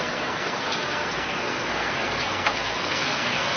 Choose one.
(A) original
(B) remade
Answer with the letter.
B